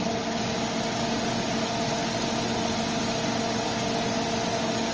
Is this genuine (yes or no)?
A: yes